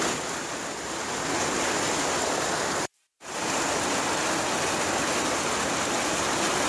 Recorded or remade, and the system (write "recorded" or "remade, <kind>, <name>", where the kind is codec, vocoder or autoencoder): recorded